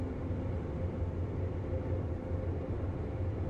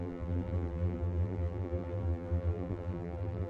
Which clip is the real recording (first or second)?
first